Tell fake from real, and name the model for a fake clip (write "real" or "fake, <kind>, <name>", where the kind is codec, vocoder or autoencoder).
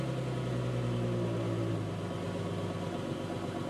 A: real